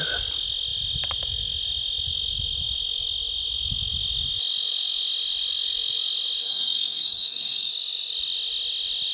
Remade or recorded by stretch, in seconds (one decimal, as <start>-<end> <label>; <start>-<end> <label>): 0.0-6.4 recorded; 6.4-7.7 remade; 7.7-9.1 recorded